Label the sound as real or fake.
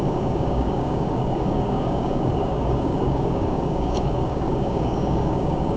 fake